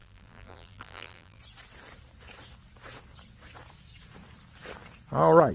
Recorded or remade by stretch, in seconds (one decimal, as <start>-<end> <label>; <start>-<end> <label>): 0.0-1.4 remade; 1.4-5.5 recorded